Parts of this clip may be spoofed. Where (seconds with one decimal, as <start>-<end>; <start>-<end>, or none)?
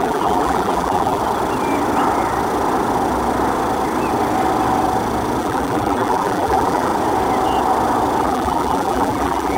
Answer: 0.0-1.2; 5.4-6.9; 8.2-9.6